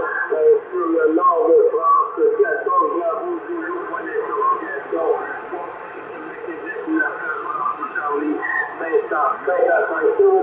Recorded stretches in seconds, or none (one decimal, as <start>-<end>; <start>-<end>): 0.0-5.6; 7.7-10.4